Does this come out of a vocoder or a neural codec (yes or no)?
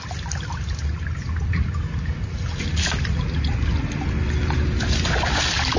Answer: no